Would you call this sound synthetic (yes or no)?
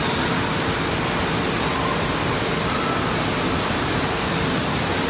no